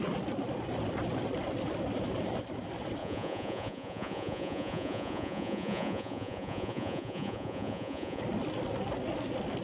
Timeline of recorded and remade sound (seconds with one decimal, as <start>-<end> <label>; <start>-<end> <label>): 0.0-3.0 recorded; 3.0-8.2 remade; 8.2-9.6 recorded